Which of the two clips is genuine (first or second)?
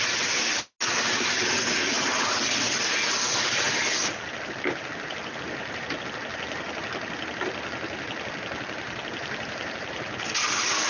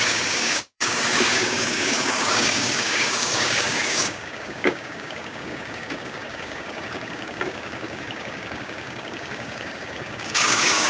first